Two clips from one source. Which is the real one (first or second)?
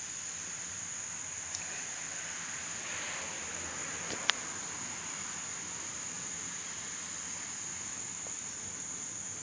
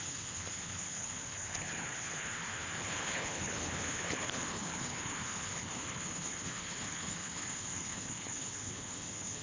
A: first